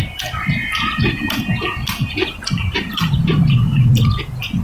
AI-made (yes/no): no